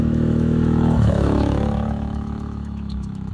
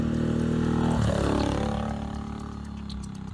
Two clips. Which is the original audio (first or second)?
second